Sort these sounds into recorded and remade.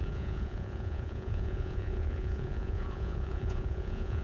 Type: remade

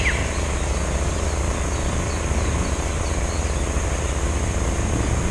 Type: recorded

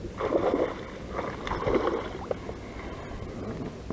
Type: recorded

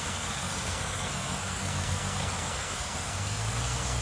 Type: remade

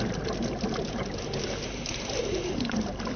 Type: remade